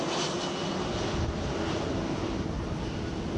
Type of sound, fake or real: real